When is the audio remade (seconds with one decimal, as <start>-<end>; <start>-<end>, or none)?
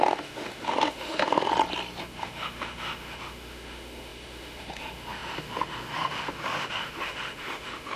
0.0-1.5; 2.0-8.0